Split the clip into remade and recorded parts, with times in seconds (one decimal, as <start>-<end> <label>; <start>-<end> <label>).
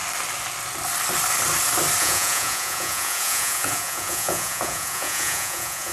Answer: 0.0-2.0 recorded; 2.0-5.9 remade